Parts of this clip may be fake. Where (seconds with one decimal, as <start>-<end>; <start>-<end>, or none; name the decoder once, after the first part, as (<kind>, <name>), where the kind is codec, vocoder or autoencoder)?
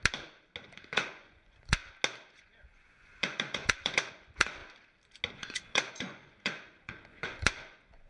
0.6-1.8 (vocoder, Vocos); 2.3-4.6; 5.3-8.1